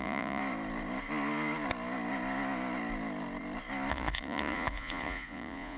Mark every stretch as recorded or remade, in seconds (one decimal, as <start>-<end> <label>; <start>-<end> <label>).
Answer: 0.0-0.4 remade; 0.4-3.9 recorded; 3.9-5.8 remade